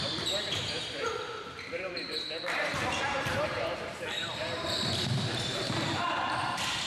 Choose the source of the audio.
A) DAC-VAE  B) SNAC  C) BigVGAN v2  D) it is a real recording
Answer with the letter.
C